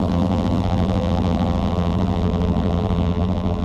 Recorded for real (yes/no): no